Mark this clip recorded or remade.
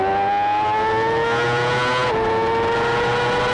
recorded